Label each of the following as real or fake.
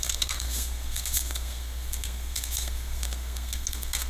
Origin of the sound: fake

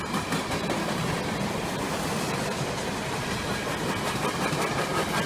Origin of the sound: real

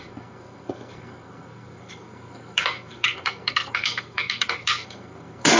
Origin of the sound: fake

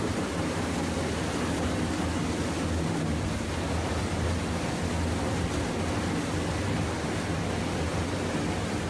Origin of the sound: real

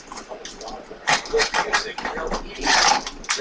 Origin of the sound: real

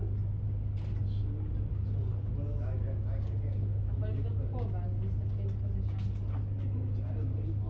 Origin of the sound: real